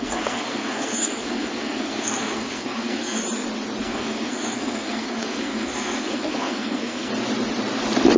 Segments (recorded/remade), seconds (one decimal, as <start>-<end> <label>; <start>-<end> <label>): 0.0-3.2 remade; 3.2-3.8 recorded; 3.8-7.1 remade; 7.1-8.2 recorded